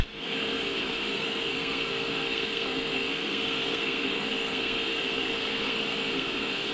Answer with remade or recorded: remade